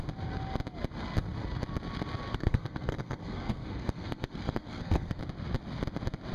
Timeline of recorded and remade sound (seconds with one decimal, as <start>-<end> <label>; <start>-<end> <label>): 0.0-2.3 recorded; 2.3-5.2 remade; 5.2-6.3 recorded